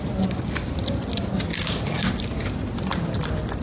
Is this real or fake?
real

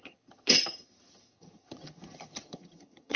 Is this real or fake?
fake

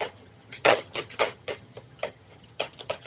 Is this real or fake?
fake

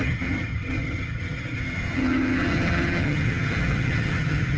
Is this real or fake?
fake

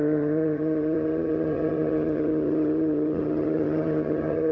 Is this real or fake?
fake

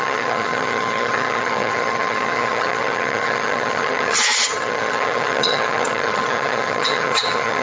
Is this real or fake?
fake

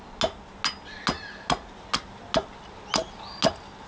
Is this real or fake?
real